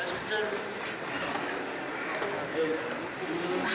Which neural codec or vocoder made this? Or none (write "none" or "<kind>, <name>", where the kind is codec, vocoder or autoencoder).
none